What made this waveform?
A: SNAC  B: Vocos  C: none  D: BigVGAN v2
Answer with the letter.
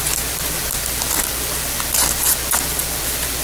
C